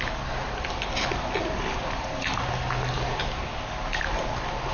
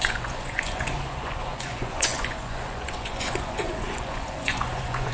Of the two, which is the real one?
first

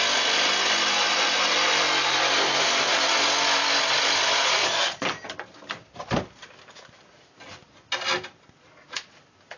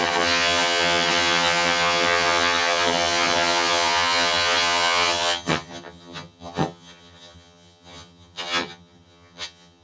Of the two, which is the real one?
first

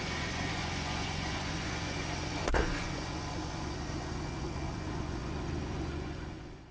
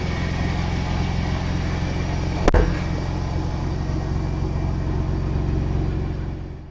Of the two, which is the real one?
second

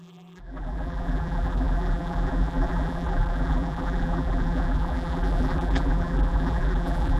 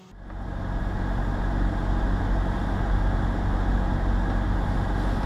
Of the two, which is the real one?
second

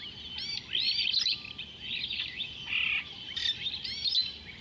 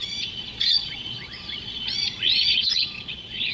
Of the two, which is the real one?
first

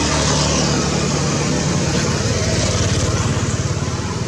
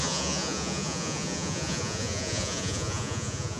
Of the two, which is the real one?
first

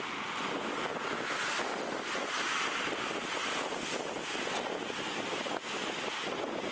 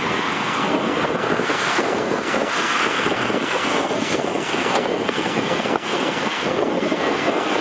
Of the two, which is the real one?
first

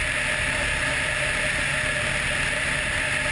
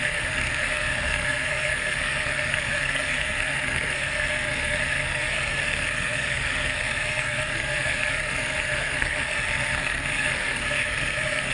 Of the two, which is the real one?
first